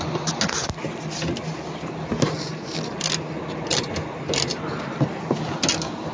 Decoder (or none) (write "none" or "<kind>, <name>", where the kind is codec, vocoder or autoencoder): none